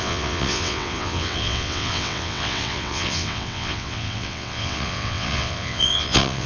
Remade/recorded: remade